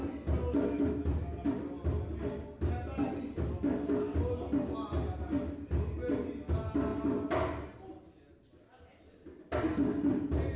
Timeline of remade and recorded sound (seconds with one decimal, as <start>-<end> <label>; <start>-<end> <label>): 0.0-10.6 recorded